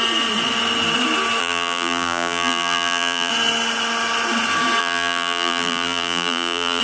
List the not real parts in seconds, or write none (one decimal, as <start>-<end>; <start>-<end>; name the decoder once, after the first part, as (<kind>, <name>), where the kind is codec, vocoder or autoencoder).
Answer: 1.4-3.3 (vocoder, BigVGAN v2); 4.8-6.8